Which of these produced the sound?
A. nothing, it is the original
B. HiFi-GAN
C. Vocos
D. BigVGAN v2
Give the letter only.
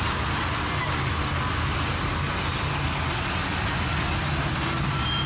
A